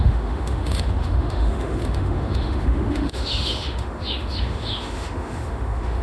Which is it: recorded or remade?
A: remade